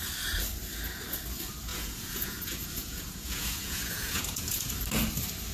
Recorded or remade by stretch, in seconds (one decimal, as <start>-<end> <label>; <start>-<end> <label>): 0.0-1.7 recorded; 1.7-4.7 remade; 4.7-5.5 recorded